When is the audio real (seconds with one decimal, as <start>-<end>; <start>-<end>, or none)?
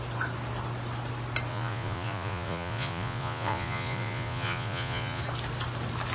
0.0-1.5; 5.2-6.1